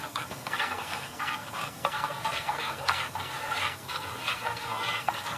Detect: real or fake fake